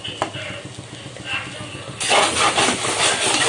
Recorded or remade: recorded